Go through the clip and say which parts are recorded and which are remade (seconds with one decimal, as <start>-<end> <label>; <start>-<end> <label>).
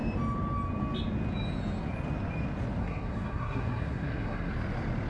0.0-2.8 recorded; 2.8-4.5 remade; 4.5-5.1 recorded